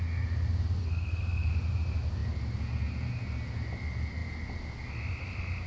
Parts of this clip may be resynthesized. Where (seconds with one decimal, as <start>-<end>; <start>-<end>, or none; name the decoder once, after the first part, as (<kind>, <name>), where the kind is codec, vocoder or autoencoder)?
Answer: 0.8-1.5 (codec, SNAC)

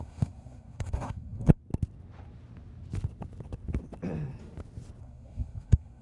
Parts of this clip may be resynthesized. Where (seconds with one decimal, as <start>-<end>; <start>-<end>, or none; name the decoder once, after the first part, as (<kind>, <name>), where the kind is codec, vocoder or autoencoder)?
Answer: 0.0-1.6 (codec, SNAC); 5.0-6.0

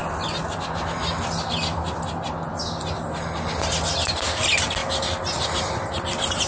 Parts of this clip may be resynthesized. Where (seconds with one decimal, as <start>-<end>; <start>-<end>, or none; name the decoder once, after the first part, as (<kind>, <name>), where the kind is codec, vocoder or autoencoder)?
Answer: none